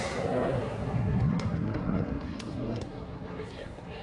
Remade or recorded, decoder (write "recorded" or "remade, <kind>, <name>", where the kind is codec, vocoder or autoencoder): remade, codec, SNAC